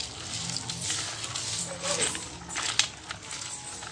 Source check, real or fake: real